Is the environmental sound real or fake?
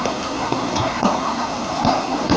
fake